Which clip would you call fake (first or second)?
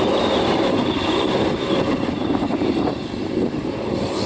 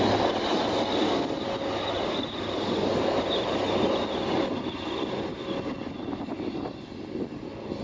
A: first